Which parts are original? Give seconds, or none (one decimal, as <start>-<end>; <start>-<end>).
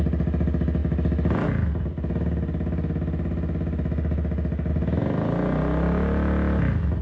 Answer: 0.0-7.0